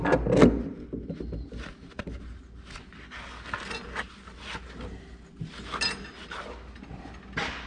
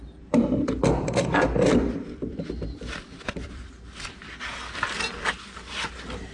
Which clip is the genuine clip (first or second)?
first